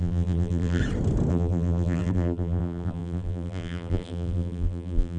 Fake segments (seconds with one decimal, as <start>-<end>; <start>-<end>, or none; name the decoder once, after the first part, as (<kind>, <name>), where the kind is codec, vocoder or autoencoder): 0.0-0.8 (vocoder, BigVGAN v2); 1.3-5.2